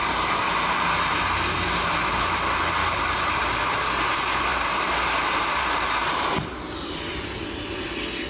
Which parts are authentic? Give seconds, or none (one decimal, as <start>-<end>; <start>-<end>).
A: 0.8-2.8; 3.9-4.5; 7.0-8.3